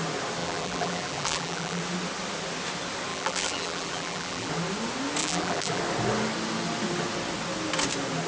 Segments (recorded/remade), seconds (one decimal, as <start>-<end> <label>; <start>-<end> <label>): 0.0-0.4 recorded; 0.4-1.8 remade; 1.8-3.1 recorded; 3.1-4.5 remade; 4.5-5.2 recorded; 5.2-5.8 remade; 5.8-8.3 recorded